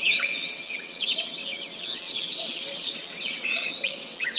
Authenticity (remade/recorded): remade